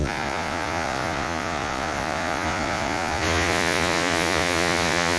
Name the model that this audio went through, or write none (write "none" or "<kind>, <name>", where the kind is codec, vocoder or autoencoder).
vocoder, Vocos